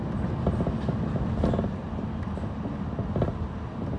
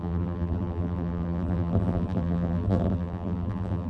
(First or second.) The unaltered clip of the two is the first